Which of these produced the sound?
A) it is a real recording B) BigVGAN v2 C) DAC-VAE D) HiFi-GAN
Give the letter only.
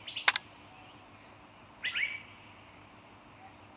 A